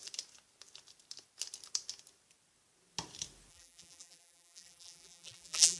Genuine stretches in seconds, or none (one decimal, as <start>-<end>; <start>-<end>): 0.0-3.5